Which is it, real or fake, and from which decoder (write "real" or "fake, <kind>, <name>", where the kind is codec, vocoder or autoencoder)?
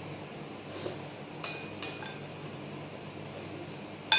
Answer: real